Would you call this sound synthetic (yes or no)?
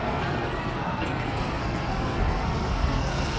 yes